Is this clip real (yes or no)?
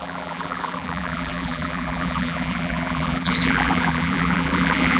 no